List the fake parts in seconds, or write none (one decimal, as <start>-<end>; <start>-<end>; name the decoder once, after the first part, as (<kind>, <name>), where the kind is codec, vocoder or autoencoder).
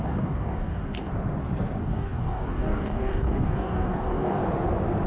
0.0-1.1 (codec, DAC); 1.8-4.4